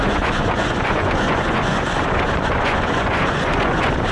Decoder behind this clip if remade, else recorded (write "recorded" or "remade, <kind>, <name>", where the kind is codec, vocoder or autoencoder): remade, vocoder, Vocos